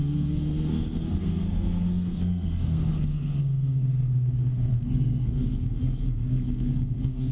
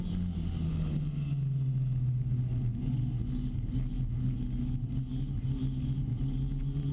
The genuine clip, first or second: second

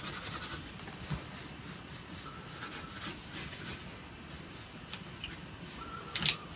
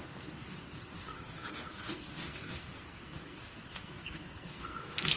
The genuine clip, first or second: first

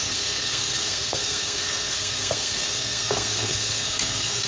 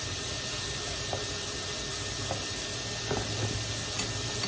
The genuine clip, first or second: second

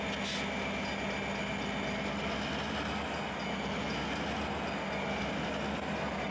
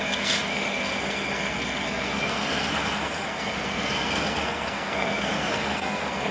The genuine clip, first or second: first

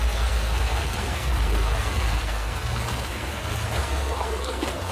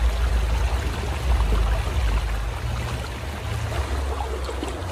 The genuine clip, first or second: second